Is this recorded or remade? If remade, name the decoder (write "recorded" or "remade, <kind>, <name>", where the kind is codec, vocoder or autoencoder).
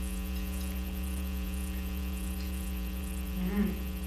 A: remade, vocoder, Vocos